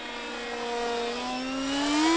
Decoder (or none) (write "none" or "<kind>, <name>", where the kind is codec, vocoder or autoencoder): none